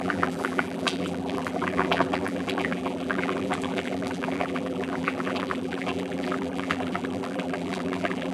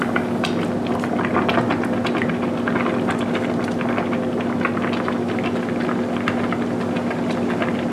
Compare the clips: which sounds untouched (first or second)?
second